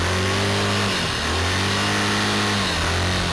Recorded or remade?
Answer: recorded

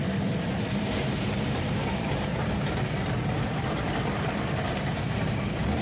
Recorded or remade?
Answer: remade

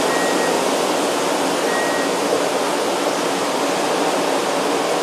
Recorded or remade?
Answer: recorded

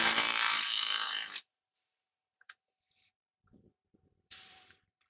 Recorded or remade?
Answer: remade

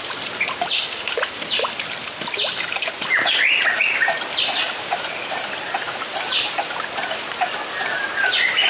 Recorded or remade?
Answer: remade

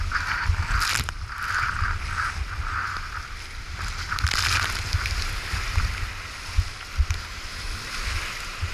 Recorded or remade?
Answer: recorded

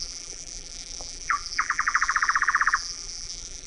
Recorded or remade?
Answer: remade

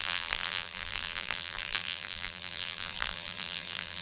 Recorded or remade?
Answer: remade